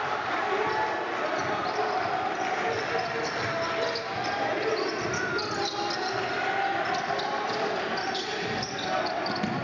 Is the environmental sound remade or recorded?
recorded